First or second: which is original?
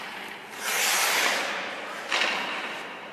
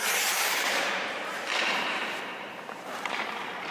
first